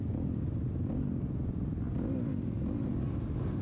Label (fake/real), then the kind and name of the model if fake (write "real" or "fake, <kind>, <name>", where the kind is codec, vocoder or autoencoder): real